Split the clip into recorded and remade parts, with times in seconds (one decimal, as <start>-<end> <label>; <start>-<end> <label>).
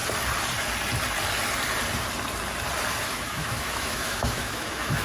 0.0-3.0 recorded; 3.0-5.0 remade